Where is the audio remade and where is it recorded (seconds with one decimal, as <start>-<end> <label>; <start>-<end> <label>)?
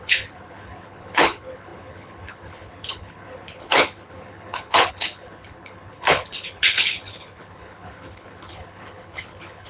0.0-9.7 remade